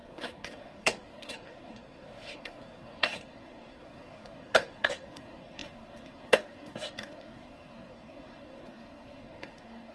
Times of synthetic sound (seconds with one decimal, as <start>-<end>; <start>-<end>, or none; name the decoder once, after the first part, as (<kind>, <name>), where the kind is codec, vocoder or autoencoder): 0.0-9.9 (codec, SNAC)

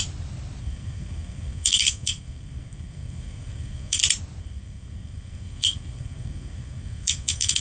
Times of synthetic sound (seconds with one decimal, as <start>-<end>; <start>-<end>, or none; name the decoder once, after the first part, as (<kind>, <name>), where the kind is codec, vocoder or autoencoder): 0.6-4.0 (codec, SNAC); 4.4-7.6

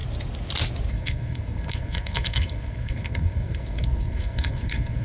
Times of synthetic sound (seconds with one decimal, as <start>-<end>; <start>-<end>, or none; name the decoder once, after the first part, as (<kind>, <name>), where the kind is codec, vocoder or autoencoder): 0.9-5.0 (codec, SNAC)